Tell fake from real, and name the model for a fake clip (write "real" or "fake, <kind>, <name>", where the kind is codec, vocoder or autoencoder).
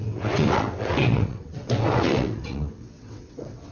fake, vocoder, WaveNeXt